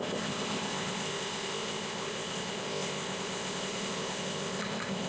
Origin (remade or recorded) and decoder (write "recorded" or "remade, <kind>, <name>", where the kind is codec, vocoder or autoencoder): remade, codec, ZipCodec